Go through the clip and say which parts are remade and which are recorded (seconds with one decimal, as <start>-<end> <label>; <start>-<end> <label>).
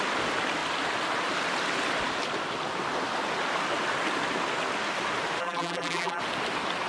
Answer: 0.0-5.4 recorded; 5.4-6.2 remade; 6.2-6.9 recorded